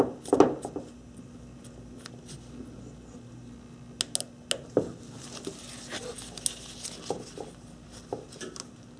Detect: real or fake real